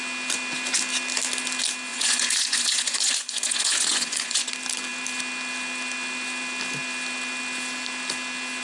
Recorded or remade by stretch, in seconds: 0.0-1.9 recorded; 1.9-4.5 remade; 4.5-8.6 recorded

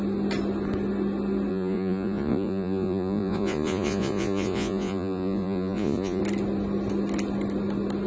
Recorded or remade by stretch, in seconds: 0.0-1.5 recorded; 1.5-6.2 remade; 6.2-8.1 recorded

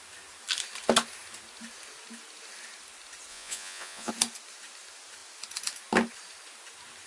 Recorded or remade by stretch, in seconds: 0.0-3.3 recorded; 3.3-4.1 remade; 4.1-7.1 recorded

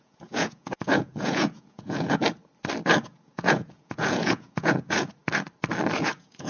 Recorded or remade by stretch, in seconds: 0.0-2.2 remade; 2.2-3.0 recorded; 3.0-5.2 remade; 5.2-6.0 recorded; 6.0-6.5 remade

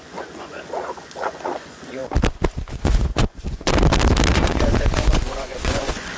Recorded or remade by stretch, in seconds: 0.0-2.0 remade; 2.0-2.7 recorded; 2.7-3.7 remade; 3.7-4.3 recorded; 4.3-6.2 remade

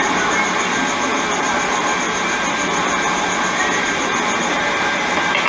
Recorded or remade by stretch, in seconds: 0.0-5.5 recorded

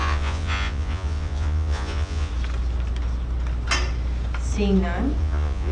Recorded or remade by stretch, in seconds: 0.0-2.3 remade; 2.3-5.2 recorded; 5.2-5.7 remade